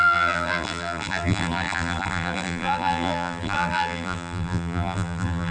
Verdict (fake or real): fake